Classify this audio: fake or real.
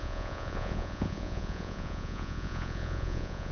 fake